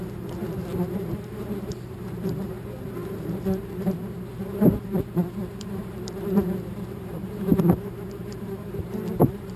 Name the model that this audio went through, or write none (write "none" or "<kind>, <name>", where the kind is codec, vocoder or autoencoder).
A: vocoder, BigVGAN v2